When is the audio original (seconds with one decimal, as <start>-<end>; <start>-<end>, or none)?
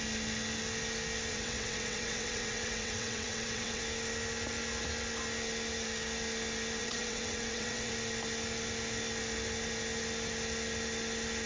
0.0-1.3; 3.8-6.8; 7.9-11.5